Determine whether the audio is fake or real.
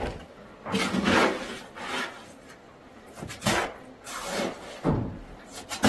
real